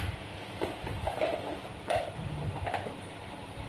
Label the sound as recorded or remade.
remade